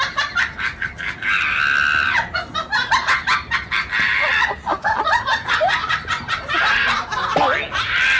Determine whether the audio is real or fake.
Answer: real